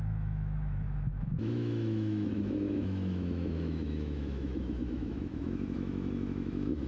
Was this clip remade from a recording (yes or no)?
yes